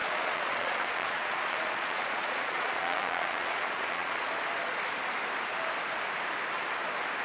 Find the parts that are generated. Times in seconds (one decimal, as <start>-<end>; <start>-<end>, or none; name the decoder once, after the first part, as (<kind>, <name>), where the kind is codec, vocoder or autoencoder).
0.0-4.3 (vocoder, Vocos)